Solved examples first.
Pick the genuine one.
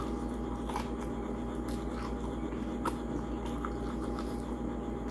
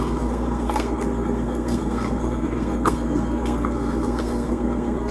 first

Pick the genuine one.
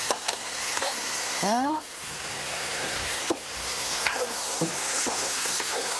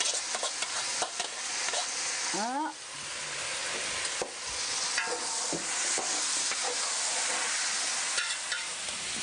second